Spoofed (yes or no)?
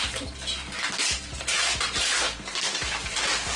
yes